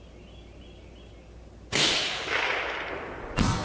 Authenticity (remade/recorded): recorded